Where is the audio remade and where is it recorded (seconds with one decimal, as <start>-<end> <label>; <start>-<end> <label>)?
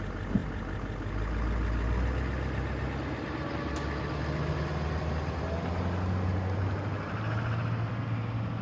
0.0-8.6 recorded